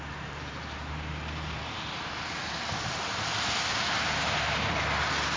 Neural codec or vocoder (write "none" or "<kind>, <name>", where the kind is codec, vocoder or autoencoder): none